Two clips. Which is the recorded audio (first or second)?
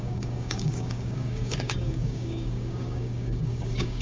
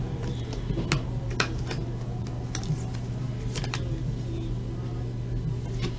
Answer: second